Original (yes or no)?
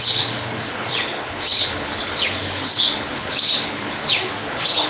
no